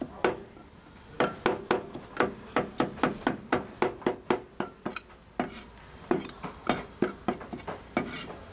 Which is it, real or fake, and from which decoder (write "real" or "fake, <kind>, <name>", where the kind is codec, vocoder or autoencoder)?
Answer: real